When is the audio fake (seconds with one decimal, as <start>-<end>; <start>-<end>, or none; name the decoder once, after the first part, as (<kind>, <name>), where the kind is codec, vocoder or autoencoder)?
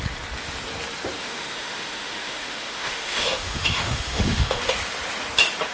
1.2-4.6 (autoencoder, DAC-VAE)